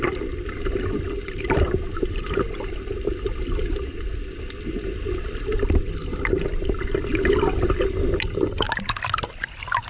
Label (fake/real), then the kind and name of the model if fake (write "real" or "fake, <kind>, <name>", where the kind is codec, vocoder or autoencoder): real